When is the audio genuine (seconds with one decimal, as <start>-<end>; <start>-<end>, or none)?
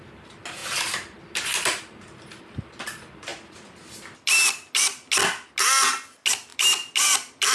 0.0-7.5